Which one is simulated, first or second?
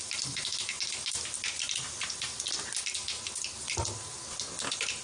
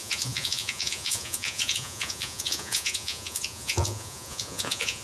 second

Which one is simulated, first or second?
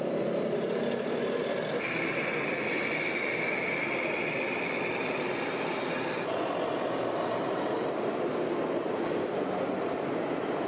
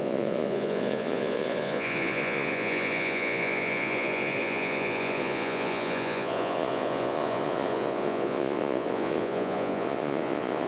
second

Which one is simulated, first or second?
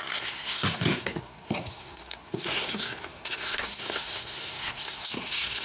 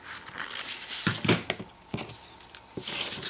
first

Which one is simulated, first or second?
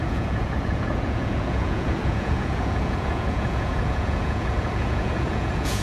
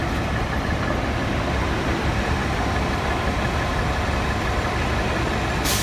first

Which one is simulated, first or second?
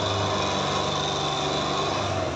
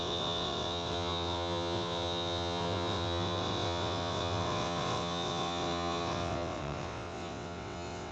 second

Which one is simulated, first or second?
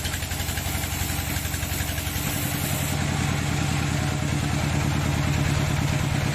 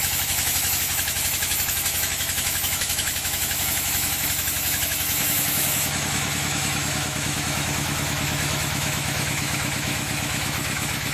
second